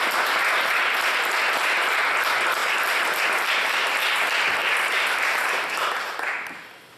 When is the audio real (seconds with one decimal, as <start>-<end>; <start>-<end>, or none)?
0.0-4.6; 5.7-7.0